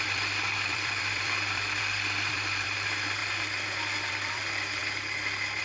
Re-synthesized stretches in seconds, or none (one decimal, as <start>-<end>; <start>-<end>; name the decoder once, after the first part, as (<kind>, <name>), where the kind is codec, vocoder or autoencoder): 0.0-1.8 (vocoder, BigVGAN v2); 2.3-3.2; 4.1-4.8